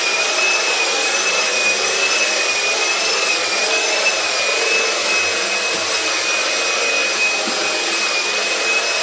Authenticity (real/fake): real